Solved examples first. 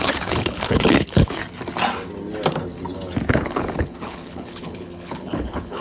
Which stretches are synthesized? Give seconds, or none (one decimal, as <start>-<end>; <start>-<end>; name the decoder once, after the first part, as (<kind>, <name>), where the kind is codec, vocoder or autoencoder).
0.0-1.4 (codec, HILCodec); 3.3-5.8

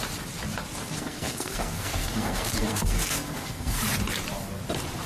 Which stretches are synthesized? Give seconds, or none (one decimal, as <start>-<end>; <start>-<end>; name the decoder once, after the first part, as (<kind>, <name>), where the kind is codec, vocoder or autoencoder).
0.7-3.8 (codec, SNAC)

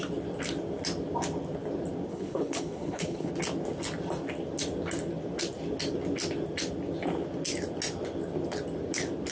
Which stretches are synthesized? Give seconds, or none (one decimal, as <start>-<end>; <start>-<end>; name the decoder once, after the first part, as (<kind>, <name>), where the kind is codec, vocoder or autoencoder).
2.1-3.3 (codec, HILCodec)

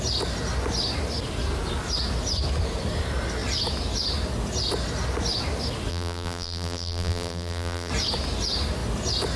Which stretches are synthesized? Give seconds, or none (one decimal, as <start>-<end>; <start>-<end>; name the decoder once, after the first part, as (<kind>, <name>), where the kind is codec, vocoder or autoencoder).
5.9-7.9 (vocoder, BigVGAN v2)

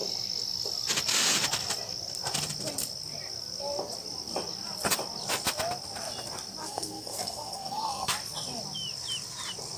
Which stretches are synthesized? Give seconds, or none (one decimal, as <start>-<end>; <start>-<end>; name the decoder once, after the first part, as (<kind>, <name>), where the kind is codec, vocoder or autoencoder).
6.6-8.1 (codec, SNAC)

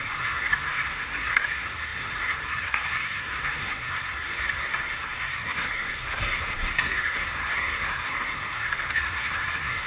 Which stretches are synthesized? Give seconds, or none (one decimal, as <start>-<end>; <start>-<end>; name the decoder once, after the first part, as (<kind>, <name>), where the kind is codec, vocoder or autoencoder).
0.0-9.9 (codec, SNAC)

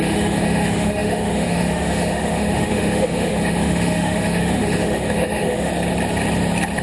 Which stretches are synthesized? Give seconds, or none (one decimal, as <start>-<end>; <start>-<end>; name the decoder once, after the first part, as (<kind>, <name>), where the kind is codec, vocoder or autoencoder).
0.0-5.7 (autoencoder, DAC-VAE)